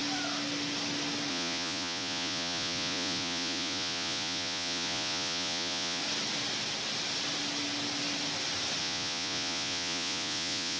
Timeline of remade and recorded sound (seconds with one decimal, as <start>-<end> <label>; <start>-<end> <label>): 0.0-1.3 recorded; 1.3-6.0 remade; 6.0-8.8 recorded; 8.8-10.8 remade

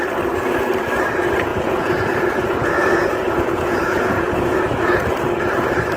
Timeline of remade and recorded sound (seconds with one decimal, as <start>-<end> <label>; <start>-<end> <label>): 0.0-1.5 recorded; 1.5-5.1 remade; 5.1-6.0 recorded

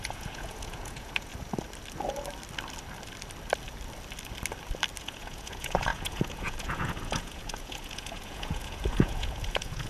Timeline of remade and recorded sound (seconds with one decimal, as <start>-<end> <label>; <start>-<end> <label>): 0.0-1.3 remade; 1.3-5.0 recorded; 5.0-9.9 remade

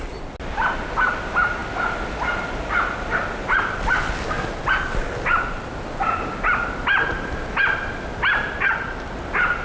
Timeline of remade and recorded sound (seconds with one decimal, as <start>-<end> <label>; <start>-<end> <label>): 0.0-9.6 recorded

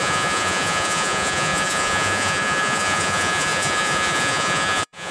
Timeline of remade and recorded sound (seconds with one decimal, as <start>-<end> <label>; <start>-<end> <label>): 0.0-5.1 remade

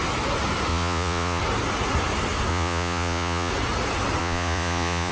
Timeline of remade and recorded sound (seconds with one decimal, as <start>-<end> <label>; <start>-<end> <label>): 0.0-0.7 recorded; 0.7-1.4 remade; 1.4-2.5 recorded; 2.5-3.5 remade; 3.5-4.2 recorded; 4.2-5.1 remade